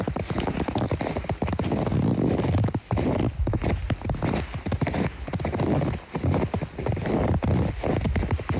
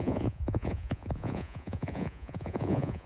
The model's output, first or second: second